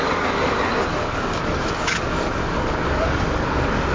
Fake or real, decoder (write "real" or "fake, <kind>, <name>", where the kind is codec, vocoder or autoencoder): fake, codec, DAC